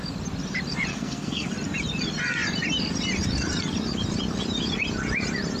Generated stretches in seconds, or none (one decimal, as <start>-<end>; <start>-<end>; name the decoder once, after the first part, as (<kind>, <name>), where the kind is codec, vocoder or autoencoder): 0.9-1.5 (codec, SNAC)

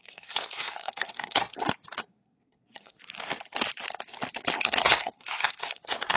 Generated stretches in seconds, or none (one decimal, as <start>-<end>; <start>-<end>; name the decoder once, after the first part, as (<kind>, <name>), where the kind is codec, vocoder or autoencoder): 0.0-1.5 (codec, SNAC); 2.0-3.0; 4.6-6.2